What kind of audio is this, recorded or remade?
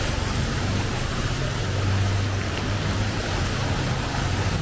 recorded